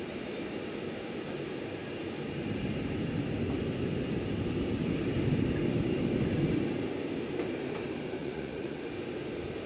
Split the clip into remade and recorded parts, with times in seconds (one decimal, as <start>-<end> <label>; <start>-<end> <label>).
0.0-8.2 recorded; 8.2-8.8 remade; 8.8-9.7 recorded